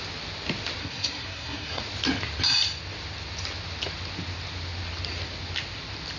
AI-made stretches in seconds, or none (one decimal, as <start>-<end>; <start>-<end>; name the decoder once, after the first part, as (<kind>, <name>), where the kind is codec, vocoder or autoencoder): 0.8-1.8 (codec, SNAC)